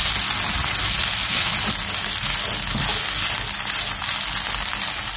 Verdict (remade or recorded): recorded